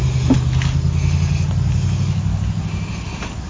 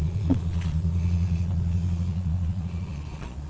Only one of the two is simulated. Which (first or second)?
second